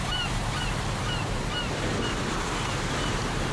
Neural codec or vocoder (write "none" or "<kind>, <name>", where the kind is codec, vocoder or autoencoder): vocoder, BigVGAN v2